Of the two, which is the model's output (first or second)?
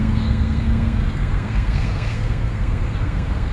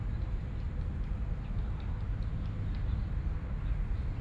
first